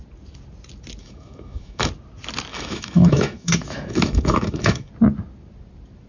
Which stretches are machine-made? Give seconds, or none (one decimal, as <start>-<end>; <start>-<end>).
1.0-1.9; 2.5-4.9

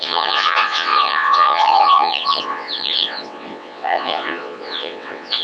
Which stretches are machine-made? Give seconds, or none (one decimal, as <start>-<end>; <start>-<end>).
0.0-5.4

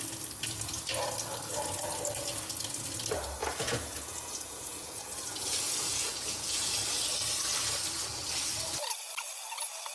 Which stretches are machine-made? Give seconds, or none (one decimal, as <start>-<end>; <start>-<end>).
3.4-6.8

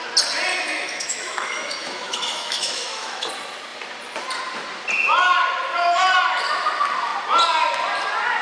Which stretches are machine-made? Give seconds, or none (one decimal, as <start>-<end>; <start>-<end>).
0.5-3.3

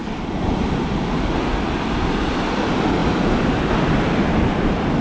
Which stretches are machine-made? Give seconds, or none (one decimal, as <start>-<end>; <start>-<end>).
none

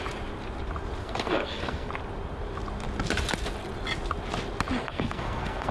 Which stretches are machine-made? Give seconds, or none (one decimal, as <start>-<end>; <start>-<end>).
1.0-1.9; 4.8-5.7

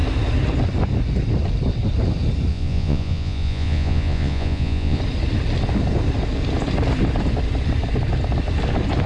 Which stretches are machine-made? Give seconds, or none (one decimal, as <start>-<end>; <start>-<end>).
2.5-5.0